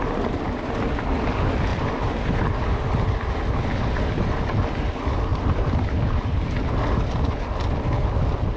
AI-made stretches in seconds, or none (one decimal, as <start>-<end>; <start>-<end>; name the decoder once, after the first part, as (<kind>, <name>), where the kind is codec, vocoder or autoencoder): 1.7-2.3 (vocoder, BigVGAN v2); 5.3-6.5